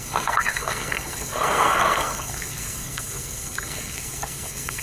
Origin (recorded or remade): remade